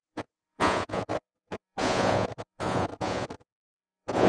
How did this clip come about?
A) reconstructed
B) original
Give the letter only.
A